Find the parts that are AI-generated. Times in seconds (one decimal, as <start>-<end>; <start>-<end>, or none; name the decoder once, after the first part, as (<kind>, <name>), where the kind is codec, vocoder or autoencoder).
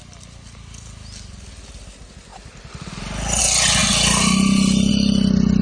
none